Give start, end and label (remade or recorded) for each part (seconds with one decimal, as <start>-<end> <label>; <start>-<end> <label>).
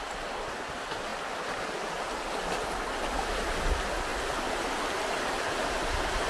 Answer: 0.0-4.1 recorded; 4.1-5.8 remade; 5.8-6.3 recorded